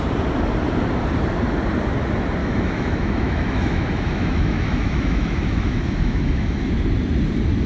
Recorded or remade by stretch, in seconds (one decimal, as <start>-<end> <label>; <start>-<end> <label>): 0.0-2.4 recorded; 2.4-6.7 remade; 6.7-7.7 recorded